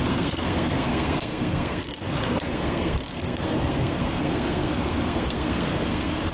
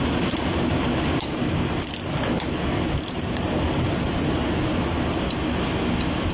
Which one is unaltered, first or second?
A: second